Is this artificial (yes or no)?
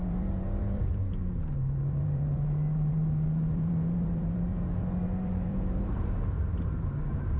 yes